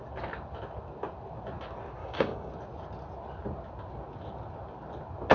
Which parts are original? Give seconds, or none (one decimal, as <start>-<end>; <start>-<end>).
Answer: 0.0-2.0; 2.5-5.3

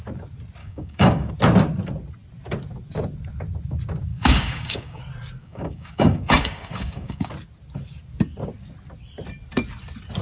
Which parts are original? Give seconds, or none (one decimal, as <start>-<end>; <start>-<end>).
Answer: 0.0-0.6; 1.3-4.1; 5.0-5.4; 7.3-10.2

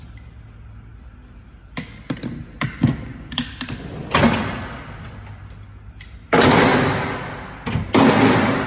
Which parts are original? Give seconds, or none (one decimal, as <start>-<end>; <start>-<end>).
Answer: 0.0-8.7

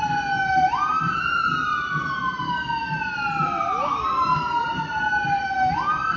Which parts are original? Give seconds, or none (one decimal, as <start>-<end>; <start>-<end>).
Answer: 0.0-6.2

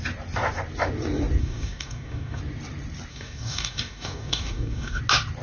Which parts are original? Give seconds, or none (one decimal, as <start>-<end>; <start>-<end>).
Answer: 0.0-1.4; 2.4-3.1; 5.0-5.4